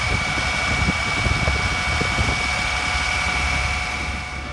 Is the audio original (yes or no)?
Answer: yes